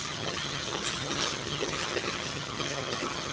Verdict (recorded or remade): remade